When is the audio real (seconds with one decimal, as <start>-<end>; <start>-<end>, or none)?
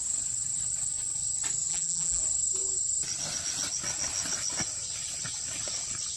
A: 0.0-1.7; 2.2-6.2